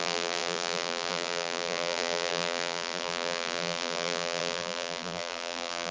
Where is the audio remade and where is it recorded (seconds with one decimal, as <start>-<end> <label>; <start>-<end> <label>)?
0.0-5.9 remade